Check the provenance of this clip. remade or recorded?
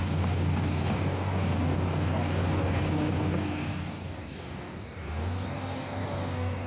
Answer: remade